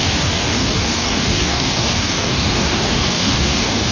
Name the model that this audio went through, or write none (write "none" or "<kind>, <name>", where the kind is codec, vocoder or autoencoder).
codec, DAC